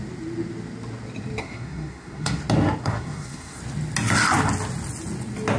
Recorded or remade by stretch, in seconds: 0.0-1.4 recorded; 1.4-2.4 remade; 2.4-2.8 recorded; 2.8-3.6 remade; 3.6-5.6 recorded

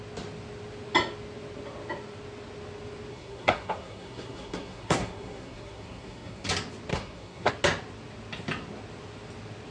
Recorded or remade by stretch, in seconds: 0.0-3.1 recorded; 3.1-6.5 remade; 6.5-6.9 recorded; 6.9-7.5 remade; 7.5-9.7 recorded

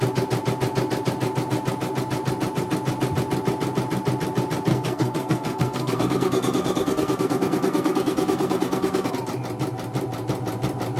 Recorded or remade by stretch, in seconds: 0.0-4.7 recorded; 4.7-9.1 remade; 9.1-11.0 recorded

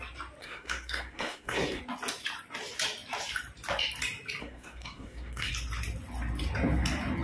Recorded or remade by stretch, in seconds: 0.0-0.4 recorded; 0.4-1.8 remade; 1.8-4.4 recorded; 4.4-5.5 remade; 5.5-7.2 recorded